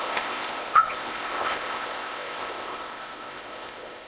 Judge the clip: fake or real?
fake